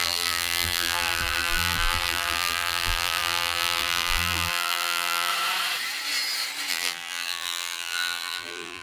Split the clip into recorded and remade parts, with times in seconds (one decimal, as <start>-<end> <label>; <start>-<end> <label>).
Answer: 0.0-5.3 remade; 5.3-6.7 recorded; 6.7-8.8 remade

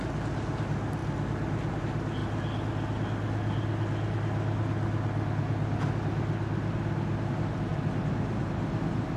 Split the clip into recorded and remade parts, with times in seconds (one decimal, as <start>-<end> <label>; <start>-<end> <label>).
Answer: 0.0-9.2 recorded

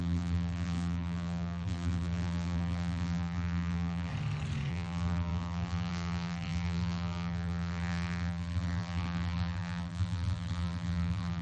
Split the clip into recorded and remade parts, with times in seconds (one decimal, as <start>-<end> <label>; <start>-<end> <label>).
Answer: 0.0-4.1 remade; 4.1-4.7 recorded; 4.7-11.4 remade